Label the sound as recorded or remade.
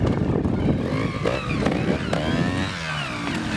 recorded